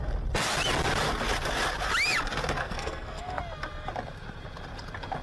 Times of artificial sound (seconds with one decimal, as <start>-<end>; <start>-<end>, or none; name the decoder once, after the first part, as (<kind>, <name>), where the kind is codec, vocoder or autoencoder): 2.6-3.4 (codec, SNAC)